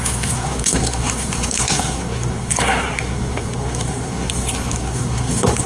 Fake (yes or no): yes